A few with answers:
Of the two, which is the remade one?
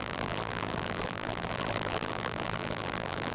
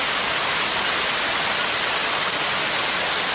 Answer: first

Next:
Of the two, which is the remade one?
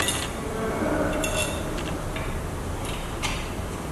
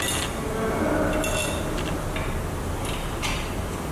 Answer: first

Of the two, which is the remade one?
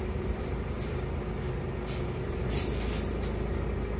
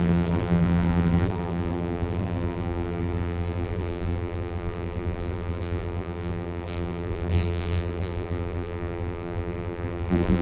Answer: second